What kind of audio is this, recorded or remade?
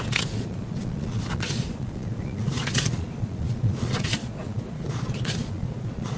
remade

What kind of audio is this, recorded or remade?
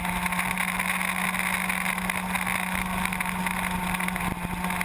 recorded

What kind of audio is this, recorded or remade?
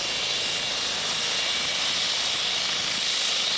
recorded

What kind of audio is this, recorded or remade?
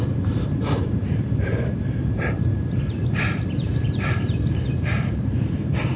remade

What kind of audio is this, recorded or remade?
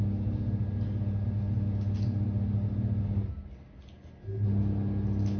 recorded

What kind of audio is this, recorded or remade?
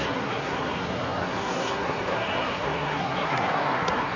remade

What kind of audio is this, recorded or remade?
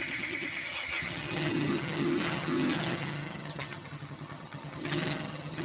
remade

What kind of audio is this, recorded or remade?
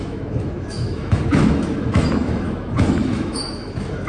remade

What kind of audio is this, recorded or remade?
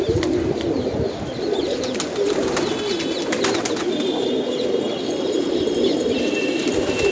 recorded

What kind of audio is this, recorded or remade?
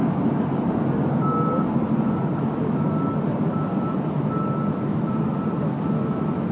recorded